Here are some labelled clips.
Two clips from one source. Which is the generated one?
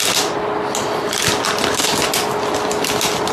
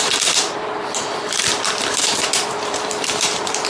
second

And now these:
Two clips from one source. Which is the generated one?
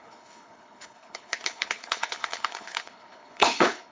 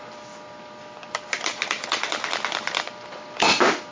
first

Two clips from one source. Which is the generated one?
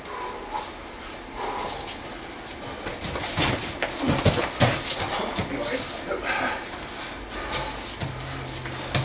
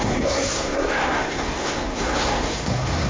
second